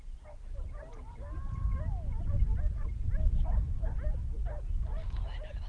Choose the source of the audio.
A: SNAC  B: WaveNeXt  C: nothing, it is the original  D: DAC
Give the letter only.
C